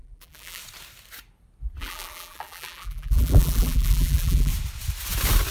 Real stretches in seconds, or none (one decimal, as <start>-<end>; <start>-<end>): 0.6-1.8; 4.5-5.5